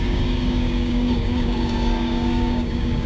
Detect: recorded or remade remade